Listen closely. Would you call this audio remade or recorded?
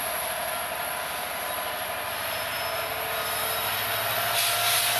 recorded